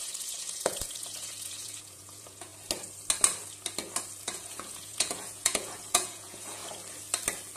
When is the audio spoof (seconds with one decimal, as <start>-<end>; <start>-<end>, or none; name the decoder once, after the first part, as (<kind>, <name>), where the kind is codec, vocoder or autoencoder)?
0.0-2.5 (vocoder, Vocos); 4.2-6.6

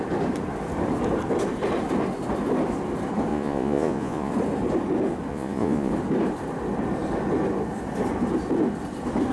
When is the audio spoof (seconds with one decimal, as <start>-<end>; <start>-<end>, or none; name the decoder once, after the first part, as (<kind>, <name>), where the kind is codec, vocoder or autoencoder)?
3.3-4.3 (vocoder, Vocos); 5.3-5.9

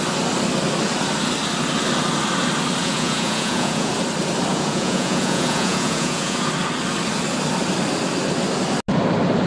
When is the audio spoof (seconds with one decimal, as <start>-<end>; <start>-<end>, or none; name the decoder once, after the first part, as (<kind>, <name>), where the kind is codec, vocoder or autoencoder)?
2.8-3.9 (vocoder, Vocos); 4.5-6.5

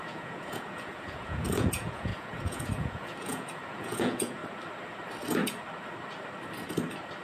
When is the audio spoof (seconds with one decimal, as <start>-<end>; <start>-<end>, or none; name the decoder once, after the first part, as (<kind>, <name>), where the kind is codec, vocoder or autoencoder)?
0.0-4.4 (vocoder, Vocos)